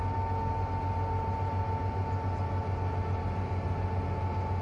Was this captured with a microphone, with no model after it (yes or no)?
yes